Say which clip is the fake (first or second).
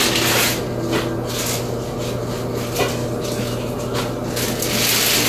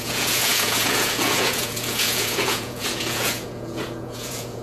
second